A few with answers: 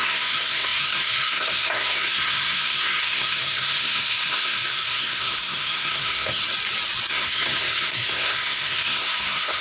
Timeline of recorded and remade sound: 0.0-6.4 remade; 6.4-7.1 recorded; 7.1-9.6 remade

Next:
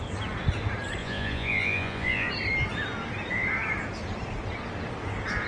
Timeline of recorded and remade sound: 0.0-1.0 recorded; 1.0-2.3 remade; 2.3-5.5 recorded

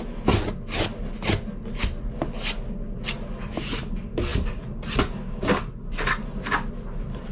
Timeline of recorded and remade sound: 0.0-7.3 recorded